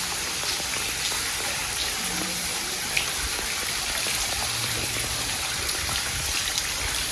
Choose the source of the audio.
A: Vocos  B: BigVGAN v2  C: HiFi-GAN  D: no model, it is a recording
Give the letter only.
B